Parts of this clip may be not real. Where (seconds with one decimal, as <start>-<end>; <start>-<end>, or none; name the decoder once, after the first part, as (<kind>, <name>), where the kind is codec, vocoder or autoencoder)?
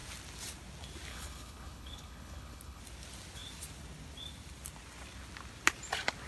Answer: 1.1-2.8 (codec, HILCodec)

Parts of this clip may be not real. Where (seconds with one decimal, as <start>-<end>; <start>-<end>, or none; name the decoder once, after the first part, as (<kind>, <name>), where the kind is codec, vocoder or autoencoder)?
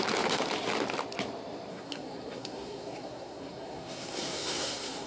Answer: 1.7-5.1 (codec, SNAC)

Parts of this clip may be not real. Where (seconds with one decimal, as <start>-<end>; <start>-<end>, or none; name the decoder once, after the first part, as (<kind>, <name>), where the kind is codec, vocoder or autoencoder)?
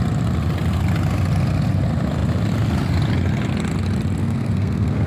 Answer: 4.2-5.1 (codec, SNAC)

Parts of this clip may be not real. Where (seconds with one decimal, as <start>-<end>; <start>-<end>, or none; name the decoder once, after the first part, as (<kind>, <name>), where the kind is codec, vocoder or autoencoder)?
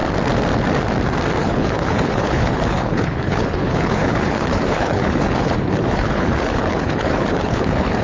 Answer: 1.4-8.0 (codec, HILCodec)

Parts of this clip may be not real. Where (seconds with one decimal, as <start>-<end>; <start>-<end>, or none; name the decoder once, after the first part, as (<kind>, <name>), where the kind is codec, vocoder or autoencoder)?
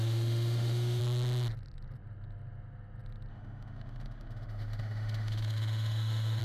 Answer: 0.0-1.0 (autoencoder, DAC-VAE); 3.3-6.4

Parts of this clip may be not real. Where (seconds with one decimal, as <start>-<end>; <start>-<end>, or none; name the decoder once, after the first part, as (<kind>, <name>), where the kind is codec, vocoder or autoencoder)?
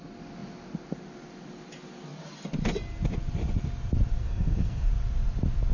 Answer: 4.2-4.9 (codec, SNAC)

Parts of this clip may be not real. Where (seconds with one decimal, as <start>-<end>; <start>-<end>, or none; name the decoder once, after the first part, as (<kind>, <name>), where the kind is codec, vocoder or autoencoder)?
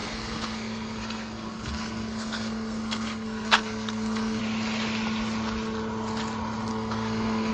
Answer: 0.0-4.4 (codec, SNAC); 6.7-7.5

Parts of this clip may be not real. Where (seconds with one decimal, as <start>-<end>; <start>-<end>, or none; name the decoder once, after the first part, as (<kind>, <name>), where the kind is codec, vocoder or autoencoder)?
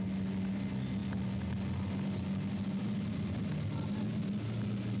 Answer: none